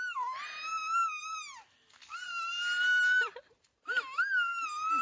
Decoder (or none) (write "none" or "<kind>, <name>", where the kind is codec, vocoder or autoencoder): none